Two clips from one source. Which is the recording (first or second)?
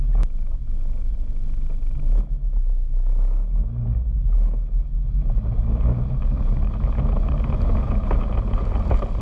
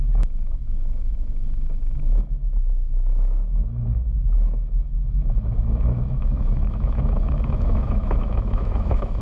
first